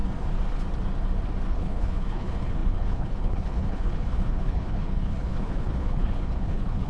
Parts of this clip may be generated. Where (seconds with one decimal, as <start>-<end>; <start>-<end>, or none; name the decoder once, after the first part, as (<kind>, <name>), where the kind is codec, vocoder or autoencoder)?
1.5-6.9 (codec, HILCodec)